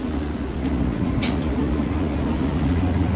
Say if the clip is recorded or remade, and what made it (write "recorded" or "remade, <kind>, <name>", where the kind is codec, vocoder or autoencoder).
remade, vocoder, Vocos